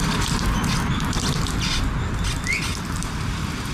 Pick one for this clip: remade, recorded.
recorded